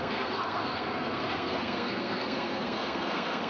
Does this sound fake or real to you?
fake